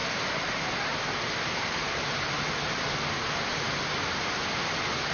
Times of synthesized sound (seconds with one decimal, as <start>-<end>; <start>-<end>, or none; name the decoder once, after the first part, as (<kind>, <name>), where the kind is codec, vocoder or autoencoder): none